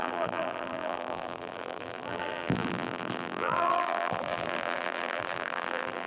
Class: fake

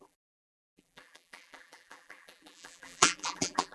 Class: fake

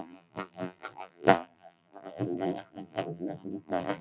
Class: fake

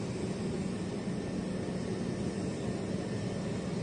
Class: real